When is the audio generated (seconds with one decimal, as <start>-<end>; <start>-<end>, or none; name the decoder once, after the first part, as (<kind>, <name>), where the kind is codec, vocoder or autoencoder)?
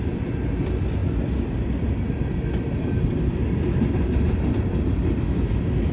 1.0-2.5 (vocoder, BigVGAN v2); 3.4-4.6